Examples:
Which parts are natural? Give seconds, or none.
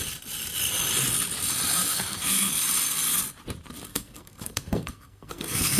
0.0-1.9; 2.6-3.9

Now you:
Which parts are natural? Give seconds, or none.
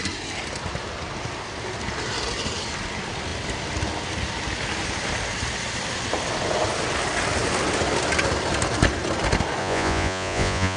0.0-9.6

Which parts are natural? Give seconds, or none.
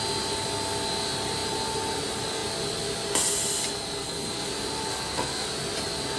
0.0-4.0; 4.5-4.9; 5.5-6.2